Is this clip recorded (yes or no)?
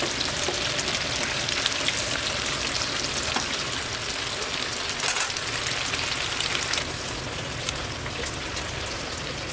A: yes